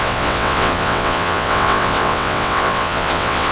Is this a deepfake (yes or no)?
yes